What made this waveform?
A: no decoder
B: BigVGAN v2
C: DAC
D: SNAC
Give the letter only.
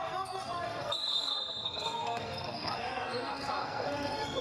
D